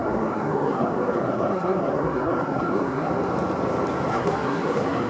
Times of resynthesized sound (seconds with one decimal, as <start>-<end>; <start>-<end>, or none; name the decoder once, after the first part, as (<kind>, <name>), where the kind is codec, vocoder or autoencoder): 0.0-3.1 (codec, SNAC); 4.1-5.1